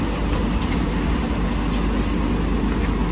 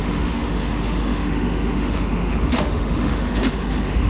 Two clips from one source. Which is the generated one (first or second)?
second